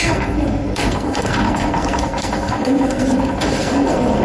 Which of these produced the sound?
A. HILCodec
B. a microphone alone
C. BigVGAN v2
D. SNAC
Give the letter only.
D